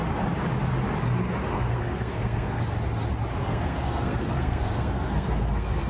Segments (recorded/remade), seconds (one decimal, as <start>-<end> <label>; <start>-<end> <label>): 0.0-1.5 recorded; 1.5-2.6 remade; 2.6-3.4 recorded; 3.4-5.9 remade